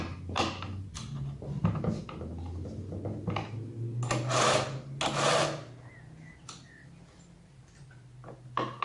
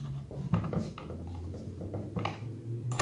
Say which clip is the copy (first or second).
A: second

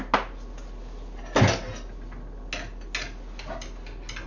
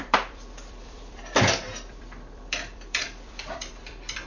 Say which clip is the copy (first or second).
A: second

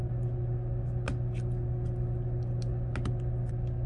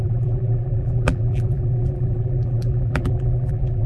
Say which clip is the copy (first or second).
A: second